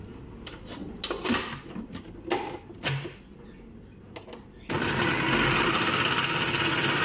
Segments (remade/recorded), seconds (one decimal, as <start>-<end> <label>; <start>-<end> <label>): 0.0-7.0 recorded

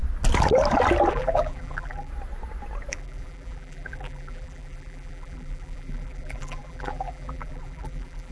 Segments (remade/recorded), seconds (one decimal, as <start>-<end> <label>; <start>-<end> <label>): 0.0-1.1 recorded; 1.1-2.1 remade; 2.1-2.9 recorded; 2.9-8.3 remade

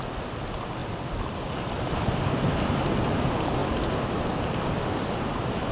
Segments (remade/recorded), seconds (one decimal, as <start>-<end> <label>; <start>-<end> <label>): 0.0-0.8 recorded; 0.8-2.5 remade; 2.5-3.6 recorded; 3.6-4.8 remade; 4.8-5.7 recorded

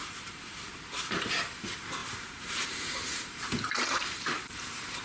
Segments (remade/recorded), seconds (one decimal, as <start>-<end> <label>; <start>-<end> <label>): 0.0-5.0 remade

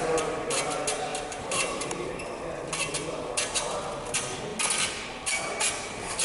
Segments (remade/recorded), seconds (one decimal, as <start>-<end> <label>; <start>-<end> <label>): 0.0-1.1 recorded; 1.1-2.2 remade; 2.2-6.2 recorded

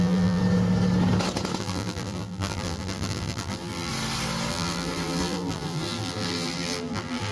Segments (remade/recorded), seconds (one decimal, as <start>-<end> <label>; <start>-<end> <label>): 0.0-0.4 remade; 0.4-1.6 recorded; 1.6-3.9 remade; 3.9-4.5 recorded; 4.5-7.3 remade

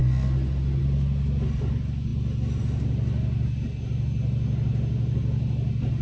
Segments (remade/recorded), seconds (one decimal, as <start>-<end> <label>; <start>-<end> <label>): 0.0-6.0 recorded

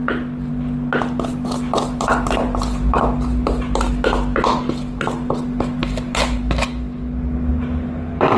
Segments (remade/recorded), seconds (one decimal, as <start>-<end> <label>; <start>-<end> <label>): 0.0-1.3 recorded; 1.3-3.0 remade; 3.0-5.8 recorded; 5.8-7.5 remade; 7.5-8.4 recorded